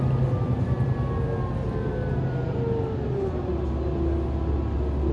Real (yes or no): yes